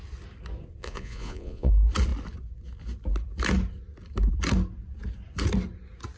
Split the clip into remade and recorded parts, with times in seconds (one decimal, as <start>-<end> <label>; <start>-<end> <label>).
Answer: 0.0-0.8 recorded; 0.8-1.7 remade; 1.7-6.2 recorded